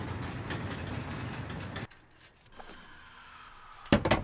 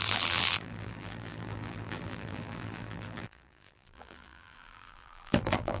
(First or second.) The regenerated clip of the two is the second